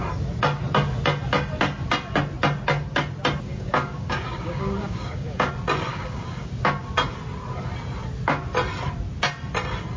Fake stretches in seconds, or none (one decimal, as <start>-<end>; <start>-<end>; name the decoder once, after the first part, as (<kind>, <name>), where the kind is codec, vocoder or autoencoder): 3.5-5.5 (codec, DAC); 5.9-6.5